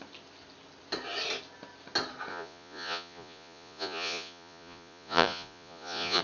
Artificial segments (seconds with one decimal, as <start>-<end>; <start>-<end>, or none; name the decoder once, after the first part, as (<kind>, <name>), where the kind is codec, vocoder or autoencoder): 2.3-6.2 (vocoder, Vocos)